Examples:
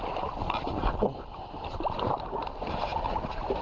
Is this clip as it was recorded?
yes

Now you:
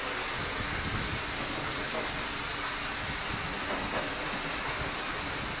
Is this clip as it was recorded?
yes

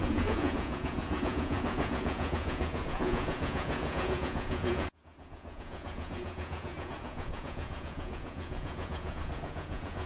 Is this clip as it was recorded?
no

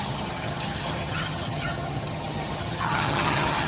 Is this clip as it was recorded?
no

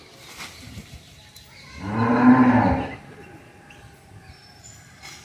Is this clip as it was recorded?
yes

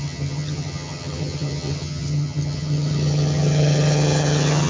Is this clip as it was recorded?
no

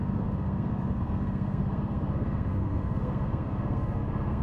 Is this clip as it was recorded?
no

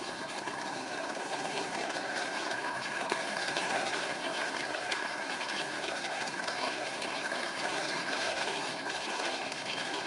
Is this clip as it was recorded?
no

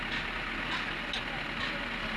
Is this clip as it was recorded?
yes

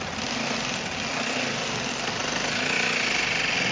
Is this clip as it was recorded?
yes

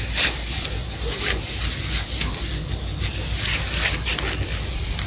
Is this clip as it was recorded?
yes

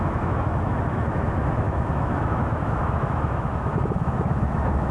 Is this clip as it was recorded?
no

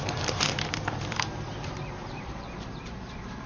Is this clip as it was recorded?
no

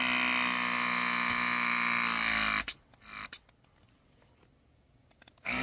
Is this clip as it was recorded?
yes